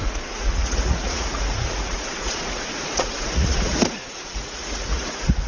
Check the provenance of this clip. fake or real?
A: fake